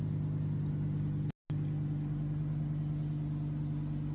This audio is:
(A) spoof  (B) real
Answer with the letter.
B